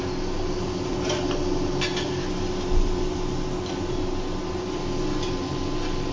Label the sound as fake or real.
real